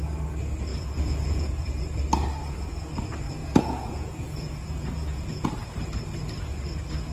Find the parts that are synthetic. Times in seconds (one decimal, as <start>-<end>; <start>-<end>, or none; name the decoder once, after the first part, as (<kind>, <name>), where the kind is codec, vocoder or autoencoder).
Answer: 0.7-1.8 (vocoder, Vocos); 3.4-5.5